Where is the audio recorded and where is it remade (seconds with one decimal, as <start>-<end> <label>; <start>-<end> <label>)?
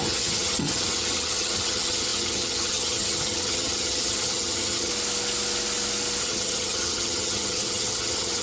0.0-4.9 remade; 4.9-6.2 recorded; 6.2-8.4 remade